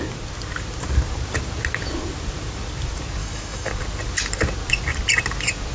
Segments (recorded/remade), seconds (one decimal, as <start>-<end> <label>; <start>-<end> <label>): 0.0-3.2 recorded; 3.2-3.7 remade; 3.7-5.7 recorded